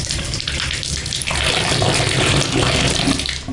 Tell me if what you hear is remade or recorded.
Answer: recorded